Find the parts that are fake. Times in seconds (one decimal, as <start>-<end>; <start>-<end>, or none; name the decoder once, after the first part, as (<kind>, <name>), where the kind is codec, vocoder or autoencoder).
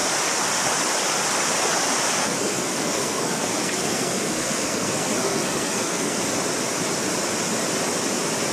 2.2-6.3 (codec, SNAC)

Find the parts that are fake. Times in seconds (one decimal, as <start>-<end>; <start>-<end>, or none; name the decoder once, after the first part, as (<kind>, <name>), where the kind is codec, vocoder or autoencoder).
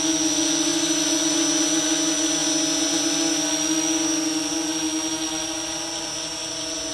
none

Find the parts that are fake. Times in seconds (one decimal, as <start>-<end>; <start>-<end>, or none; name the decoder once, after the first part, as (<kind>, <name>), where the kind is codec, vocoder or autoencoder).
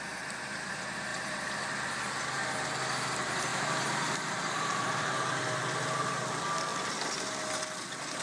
1.1-1.9 (vocoder, BigVGAN v2); 3.5-5.4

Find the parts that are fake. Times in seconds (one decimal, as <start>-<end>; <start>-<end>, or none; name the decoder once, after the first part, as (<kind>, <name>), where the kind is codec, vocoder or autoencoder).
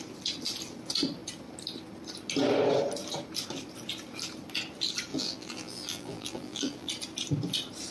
5.1-6.9 (vocoder, BigVGAN v2)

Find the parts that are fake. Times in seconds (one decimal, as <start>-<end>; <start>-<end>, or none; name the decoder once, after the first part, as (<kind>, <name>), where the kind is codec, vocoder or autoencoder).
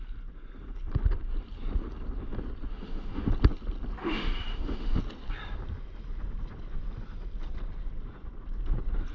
2.7-3.3 (autoencoder, DAC-VAE); 4.0-5.0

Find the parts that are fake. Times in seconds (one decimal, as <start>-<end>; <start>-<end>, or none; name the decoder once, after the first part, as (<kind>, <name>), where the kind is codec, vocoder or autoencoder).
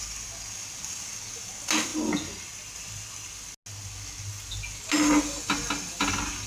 none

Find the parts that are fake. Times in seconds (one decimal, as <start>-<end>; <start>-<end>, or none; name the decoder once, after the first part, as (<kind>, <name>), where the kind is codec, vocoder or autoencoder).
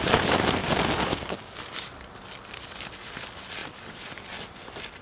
0.6-1.5 (codec, DAC)